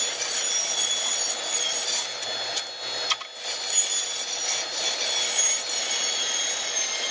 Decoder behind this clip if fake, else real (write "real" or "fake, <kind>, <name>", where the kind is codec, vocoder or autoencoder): real